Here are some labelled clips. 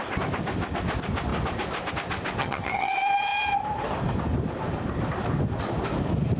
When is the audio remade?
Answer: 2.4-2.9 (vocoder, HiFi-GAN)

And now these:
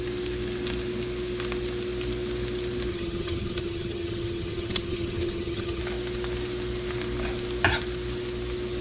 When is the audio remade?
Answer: 2.9-5.8 (vocoder, HiFi-GAN)